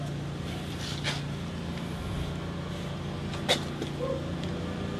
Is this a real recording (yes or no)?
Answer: yes